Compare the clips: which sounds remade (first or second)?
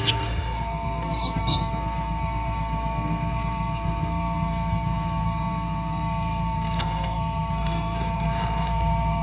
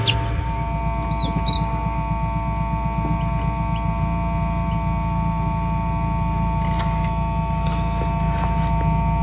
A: first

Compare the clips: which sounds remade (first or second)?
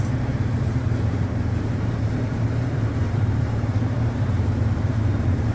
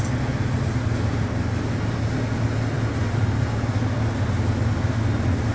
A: first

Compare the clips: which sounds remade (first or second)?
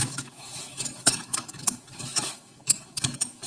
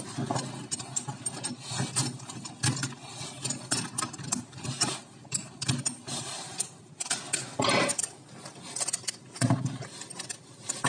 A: first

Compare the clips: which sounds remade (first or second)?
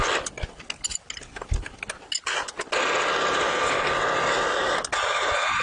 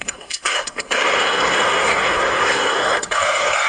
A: second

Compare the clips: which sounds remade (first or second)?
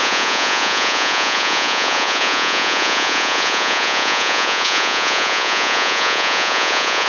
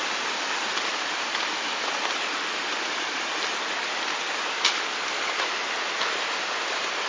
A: first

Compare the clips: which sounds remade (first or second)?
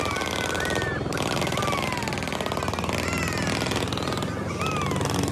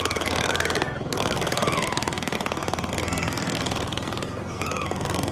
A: second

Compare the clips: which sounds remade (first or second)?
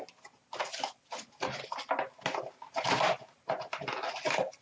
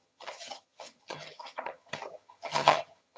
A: second